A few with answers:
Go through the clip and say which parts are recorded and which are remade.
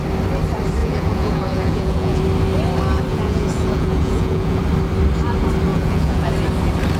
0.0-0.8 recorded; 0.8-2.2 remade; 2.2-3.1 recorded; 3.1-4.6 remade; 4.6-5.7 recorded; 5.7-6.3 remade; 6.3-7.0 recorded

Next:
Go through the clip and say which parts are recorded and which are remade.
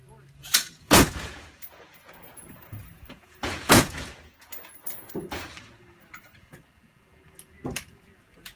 0.0-0.4 recorded; 0.4-5.1 remade; 5.1-8.6 recorded